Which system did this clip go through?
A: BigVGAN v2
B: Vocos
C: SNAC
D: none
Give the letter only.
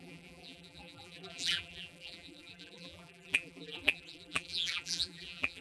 A